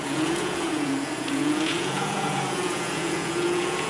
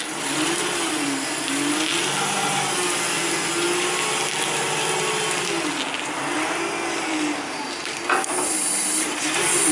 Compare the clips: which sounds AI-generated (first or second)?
first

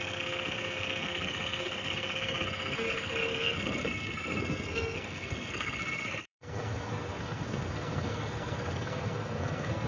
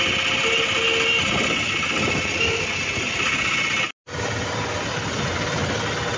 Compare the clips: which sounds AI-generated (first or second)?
first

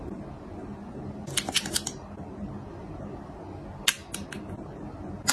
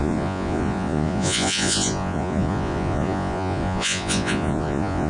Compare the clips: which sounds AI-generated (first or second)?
second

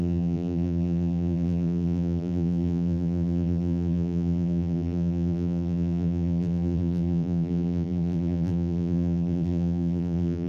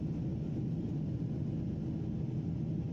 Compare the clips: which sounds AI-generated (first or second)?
first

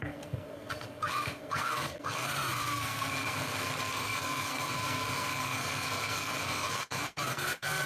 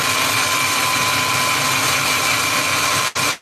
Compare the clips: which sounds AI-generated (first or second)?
first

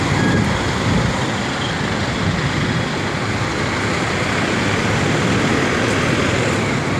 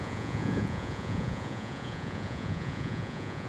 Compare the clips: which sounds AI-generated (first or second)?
second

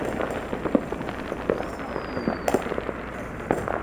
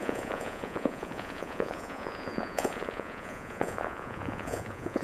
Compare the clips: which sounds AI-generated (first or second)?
second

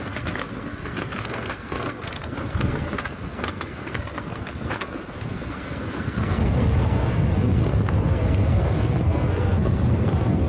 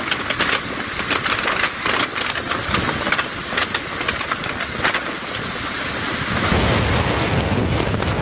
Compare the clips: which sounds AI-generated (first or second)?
first